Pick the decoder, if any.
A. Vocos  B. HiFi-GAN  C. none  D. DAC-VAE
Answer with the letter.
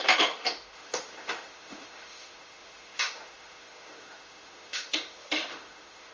D